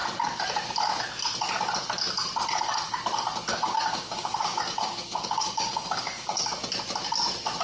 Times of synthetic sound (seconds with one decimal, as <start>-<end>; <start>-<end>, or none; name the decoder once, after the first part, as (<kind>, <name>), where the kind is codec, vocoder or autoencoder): 3.5-6.4 (codec, DAC)